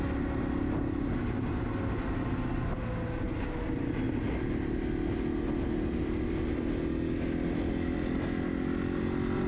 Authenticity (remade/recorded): recorded